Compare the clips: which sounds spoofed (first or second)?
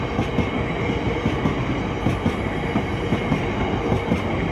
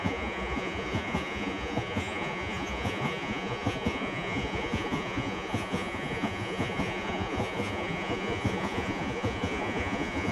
second